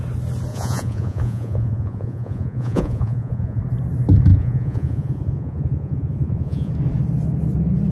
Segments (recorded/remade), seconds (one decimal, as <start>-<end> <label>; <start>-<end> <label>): 0.0-0.5 recorded; 0.5-3.6 remade; 3.6-4.3 recorded; 4.3-6.7 remade; 6.7-7.9 recorded